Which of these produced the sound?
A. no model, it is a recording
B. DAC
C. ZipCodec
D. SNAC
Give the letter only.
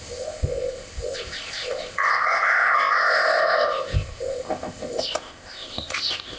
C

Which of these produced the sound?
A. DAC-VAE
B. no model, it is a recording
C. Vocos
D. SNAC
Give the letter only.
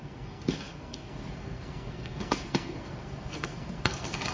D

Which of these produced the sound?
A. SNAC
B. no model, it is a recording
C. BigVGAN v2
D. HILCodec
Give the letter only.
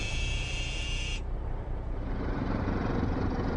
C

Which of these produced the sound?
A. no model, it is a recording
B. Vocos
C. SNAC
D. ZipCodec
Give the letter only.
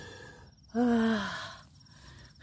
A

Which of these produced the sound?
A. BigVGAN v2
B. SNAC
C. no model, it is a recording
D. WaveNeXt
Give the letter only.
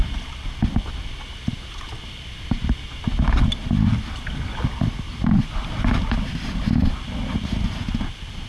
C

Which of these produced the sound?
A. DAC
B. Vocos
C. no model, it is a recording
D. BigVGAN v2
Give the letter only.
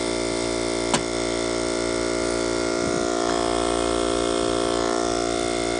C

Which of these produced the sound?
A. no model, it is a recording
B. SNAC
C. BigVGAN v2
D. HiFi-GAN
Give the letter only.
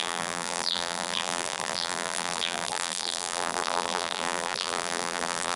C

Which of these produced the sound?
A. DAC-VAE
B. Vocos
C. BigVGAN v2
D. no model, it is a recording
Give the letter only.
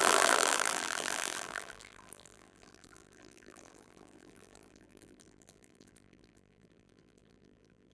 C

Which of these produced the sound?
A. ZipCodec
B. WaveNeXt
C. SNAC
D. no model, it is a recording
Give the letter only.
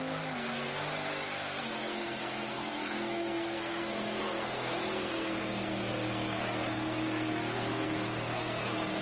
C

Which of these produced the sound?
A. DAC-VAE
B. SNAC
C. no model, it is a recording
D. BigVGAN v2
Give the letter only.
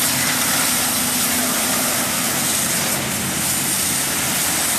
C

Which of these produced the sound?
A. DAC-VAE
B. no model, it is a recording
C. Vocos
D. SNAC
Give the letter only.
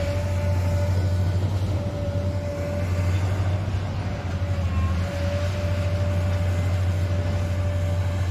B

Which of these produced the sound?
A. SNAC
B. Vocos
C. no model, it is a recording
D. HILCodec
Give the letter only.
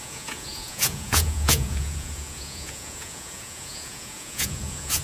B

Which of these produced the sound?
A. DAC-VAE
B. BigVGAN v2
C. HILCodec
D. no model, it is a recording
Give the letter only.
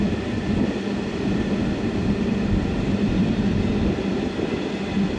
B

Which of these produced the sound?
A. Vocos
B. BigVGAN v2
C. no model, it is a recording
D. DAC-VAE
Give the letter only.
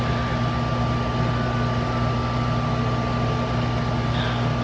C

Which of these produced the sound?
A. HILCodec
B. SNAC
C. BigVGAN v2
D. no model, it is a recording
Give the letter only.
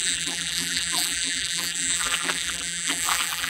C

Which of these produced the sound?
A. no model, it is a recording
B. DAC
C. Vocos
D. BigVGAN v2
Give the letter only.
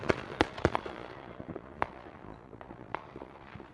C